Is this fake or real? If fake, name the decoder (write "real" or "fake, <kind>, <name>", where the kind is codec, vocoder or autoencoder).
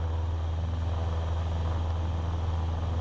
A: real